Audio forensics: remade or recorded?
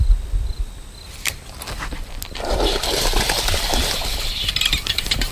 recorded